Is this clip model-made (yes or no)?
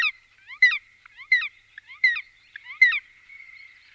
yes